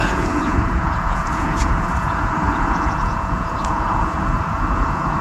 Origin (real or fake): fake